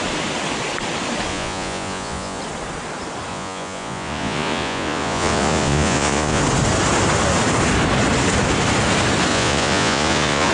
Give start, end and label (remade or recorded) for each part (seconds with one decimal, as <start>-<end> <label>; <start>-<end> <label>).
0.0-1.3 recorded; 1.3-2.4 remade; 2.4-3.3 recorded; 3.3-6.4 remade; 6.4-9.3 recorded; 9.3-10.5 remade